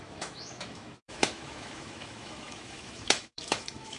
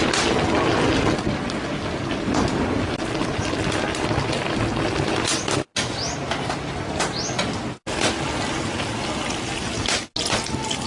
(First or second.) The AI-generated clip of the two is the first